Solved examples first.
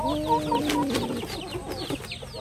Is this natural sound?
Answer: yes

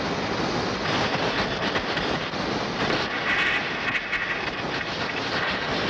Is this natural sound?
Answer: yes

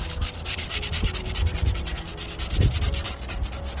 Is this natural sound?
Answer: yes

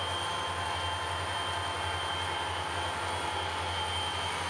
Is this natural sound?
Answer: yes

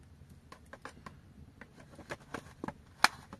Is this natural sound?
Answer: yes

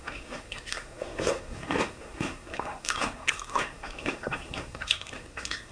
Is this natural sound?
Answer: no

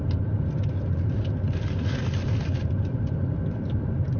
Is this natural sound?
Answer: yes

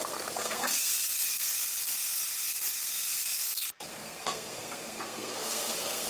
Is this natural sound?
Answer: no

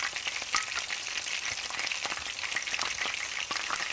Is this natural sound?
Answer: yes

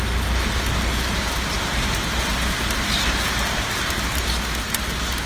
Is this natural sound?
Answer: yes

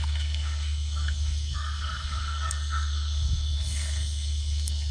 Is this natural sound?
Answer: no